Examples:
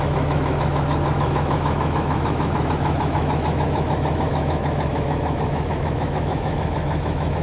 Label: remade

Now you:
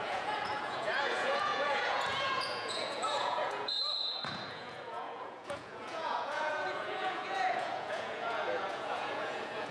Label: remade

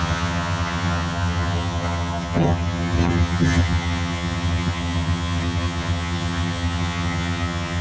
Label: remade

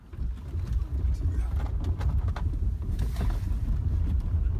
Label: recorded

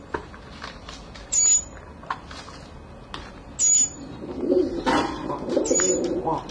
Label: recorded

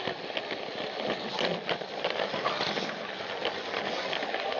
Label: recorded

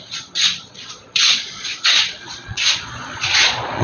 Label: remade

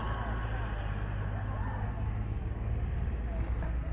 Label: recorded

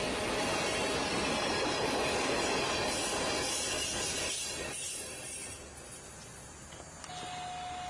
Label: recorded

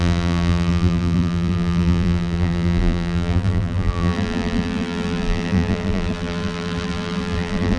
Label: remade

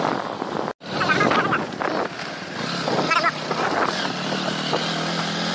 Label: recorded